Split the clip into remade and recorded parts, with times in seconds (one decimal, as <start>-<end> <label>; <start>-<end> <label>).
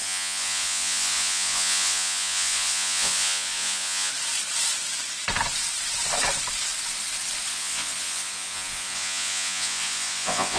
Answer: 0.0-4.1 remade; 4.1-7.5 recorded; 7.5-10.6 remade